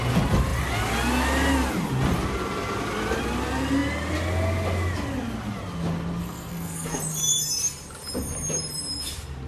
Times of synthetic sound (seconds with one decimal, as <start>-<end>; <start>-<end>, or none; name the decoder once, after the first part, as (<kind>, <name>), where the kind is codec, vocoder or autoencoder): 6.2-7.0 (codec, SNAC)